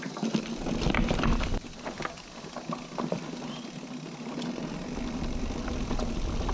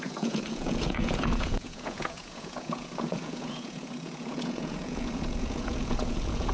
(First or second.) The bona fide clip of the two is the first